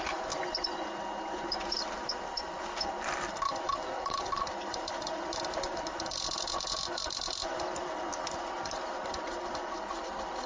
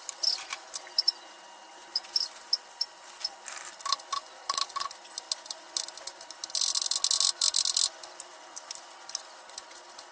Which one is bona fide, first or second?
second